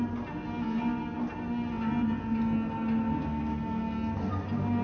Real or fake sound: real